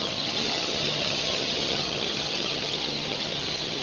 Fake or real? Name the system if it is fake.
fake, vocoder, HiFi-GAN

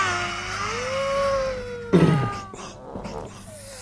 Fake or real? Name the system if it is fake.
real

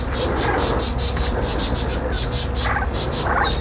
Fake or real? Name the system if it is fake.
real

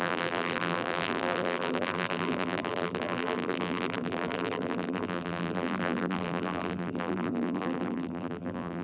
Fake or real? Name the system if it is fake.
fake, vocoder, BigVGAN v2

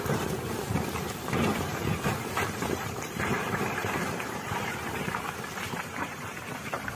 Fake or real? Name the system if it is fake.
fake, vocoder, BigVGAN v2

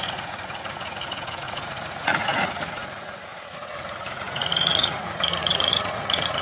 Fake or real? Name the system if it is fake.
fake, vocoder, Vocos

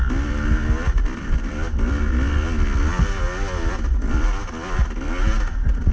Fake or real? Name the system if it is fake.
real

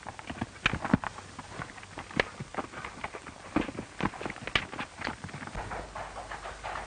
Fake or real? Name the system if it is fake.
real